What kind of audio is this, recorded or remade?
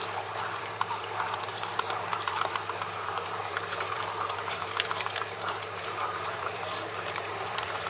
remade